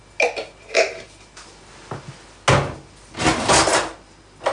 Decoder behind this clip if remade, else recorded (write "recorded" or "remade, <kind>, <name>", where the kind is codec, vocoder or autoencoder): recorded